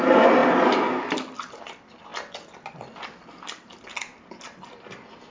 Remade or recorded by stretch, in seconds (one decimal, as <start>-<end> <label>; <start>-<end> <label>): 0.0-5.3 recorded